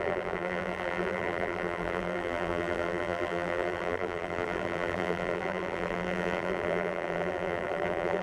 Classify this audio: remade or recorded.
remade